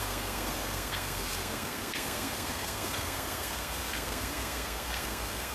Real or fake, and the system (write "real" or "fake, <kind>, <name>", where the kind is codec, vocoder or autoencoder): fake, codec, SNAC